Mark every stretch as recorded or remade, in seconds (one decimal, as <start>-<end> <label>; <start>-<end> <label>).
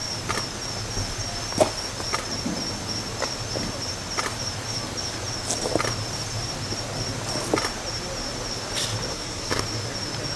0.0-9.1 recorded; 9.1-9.6 remade; 9.6-10.4 recorded